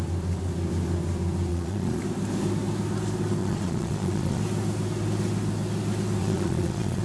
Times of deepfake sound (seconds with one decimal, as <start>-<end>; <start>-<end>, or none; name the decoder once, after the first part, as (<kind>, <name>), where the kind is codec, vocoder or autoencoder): 1.5-2.0 (vocoder, Vocos); 3.4-4.4; 6.2-7.0

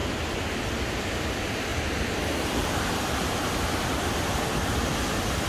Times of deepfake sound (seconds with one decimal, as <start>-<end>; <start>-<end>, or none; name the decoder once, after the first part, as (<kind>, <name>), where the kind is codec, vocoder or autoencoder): 0.6-5.5 (vocoder, BigVGAN v2)

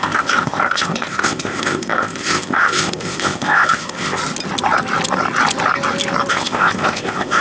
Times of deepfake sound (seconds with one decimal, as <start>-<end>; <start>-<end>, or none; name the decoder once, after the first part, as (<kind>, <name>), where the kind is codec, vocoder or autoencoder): 0.0-4.2 (codec, ZipCodec); 6.3-7.4

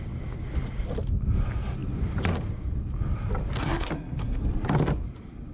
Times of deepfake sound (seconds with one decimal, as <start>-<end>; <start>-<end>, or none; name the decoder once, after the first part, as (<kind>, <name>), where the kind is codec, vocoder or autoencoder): 3.6-4.4 (codec, SNAC)